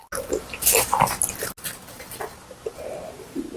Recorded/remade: recorded